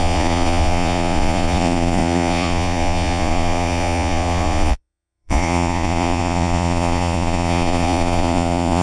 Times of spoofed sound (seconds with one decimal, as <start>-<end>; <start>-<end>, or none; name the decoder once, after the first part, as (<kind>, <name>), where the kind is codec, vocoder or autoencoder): 0.0-8.8 (vocoder, Vocos)